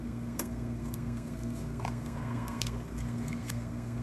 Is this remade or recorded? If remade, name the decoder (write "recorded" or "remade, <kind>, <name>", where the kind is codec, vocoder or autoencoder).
remade, codec, SNAC